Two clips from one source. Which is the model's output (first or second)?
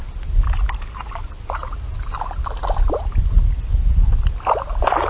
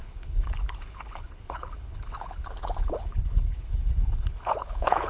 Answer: second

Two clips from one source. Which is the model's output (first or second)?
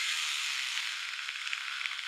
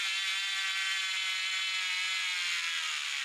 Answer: first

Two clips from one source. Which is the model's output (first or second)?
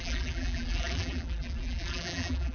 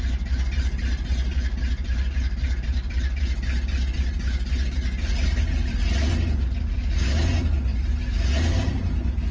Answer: first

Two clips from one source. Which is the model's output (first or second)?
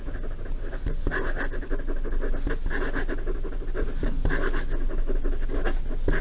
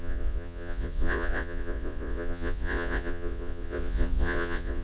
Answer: second